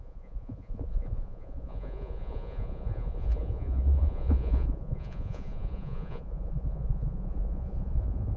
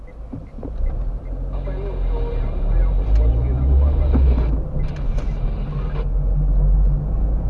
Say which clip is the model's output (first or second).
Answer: first